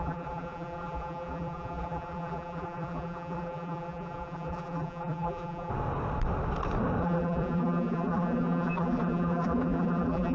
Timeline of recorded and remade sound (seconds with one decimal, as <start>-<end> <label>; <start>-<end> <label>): 0.0-5.7 remade; 5.7-7.0 recorded; 7.0-10.3 remade